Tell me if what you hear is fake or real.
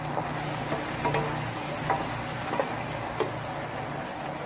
real